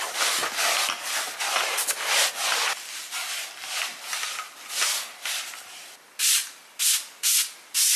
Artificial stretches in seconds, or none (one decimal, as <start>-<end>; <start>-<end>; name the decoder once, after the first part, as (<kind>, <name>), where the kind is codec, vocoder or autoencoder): none